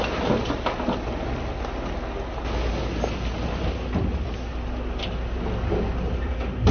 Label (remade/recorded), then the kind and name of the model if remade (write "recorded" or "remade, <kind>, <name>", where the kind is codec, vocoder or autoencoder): recorded